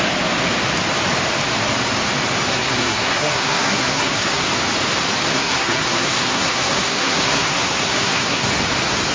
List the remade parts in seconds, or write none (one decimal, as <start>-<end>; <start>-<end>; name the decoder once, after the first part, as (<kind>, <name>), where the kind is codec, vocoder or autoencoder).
2.5-4.4 (codec, SNAC); 5.3-8.5